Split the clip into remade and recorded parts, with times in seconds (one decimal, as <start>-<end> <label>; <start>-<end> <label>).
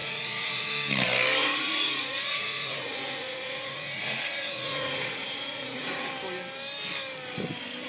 0.0-0.7 remade; 0.7-1.4 recorded; 1.4-6.1 remade; 6.1-7.9 recorded